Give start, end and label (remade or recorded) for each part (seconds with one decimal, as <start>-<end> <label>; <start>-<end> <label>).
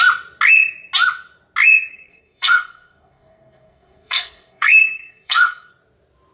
0.0-1.9 recorded; 1.9-5.7 remade; 5.7-6.3 recorded